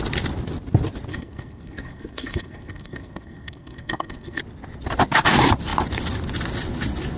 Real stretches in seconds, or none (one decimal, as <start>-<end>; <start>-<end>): 0.0-1.1; 4.4-7.2